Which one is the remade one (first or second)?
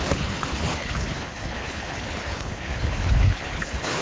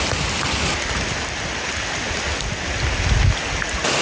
first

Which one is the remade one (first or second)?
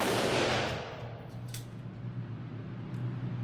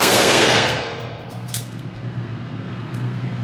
second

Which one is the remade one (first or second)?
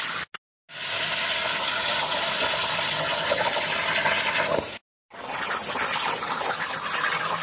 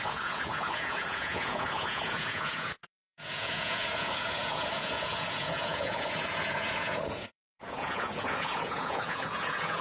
second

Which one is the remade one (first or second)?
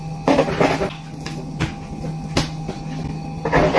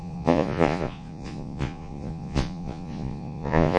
second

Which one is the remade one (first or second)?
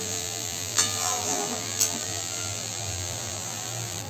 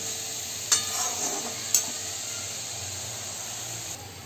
first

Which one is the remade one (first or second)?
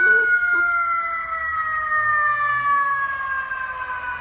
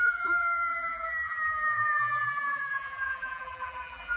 second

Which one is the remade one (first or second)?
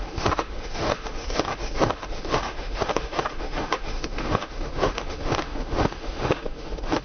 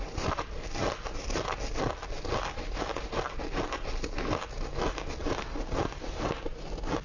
first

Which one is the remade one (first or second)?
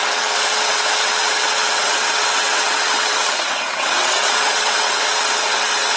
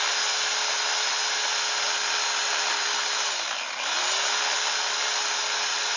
first